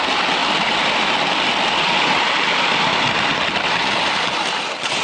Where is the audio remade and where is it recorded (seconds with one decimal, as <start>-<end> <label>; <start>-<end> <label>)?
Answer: 0.0-5.0 recorded